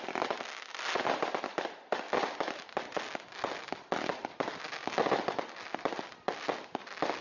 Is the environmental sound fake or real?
real